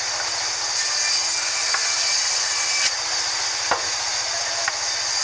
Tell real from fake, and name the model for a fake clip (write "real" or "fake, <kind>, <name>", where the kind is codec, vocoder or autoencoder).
real